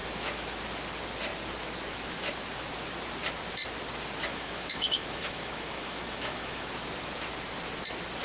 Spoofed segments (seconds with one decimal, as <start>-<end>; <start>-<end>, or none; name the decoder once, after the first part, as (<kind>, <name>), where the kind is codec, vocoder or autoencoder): 0.0-0.6 (autoencoder, DAC-VAE); 4.3-6.7